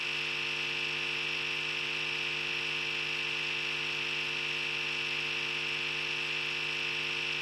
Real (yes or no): yes